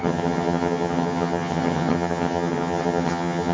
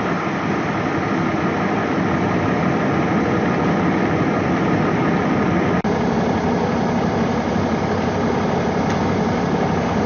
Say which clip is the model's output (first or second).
first